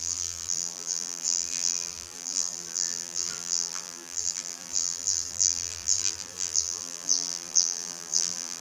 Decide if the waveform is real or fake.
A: fake